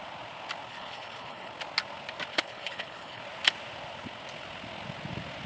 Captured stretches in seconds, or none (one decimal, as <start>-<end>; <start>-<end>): 0.0-0.7; 1.5-2.3; 3.2-5.5